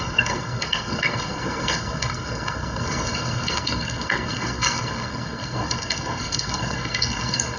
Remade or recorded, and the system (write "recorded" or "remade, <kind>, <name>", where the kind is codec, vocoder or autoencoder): remade, codec, SNAC